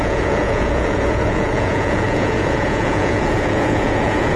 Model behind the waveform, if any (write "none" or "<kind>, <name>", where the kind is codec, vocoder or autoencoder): vocoder, Vocos